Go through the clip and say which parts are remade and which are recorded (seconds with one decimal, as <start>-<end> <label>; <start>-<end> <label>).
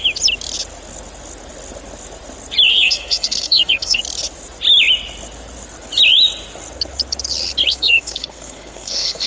0.0-2.7 recorded; 2.7-4.0 remade; 4.0-7.7 recorded; 7.7-9.3 remade